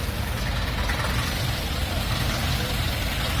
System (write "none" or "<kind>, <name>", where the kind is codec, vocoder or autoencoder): none